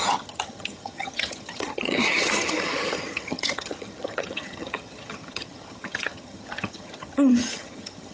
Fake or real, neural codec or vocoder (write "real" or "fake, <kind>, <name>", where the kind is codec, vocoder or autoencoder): fake, vocoder, HiFi-GAN